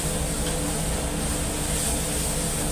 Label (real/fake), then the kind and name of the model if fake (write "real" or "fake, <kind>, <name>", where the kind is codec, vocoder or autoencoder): real